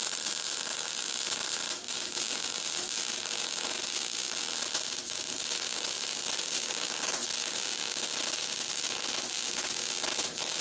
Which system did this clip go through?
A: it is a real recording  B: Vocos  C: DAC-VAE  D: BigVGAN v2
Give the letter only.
A